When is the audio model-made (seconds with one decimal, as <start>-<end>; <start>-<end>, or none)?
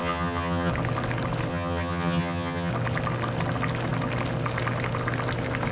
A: 0.0-0.7; 1.5-2.7